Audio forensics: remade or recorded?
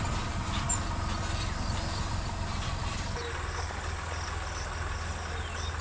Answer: recorded